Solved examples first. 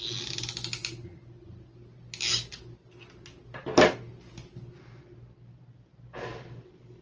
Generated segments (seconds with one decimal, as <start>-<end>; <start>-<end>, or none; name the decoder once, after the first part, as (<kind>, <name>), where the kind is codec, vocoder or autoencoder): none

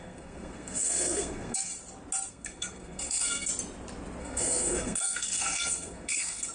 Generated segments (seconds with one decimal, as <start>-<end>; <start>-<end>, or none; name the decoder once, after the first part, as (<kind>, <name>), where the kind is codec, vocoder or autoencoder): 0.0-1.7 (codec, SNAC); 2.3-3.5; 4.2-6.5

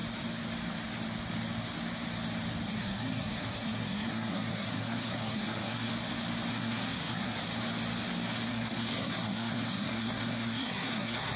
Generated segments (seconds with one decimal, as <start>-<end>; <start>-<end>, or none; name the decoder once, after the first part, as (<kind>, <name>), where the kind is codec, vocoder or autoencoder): 2.7-5.9 (codec, SNAC); 6.5-7.4; 8.5-11.4